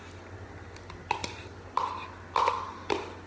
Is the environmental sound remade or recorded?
recorded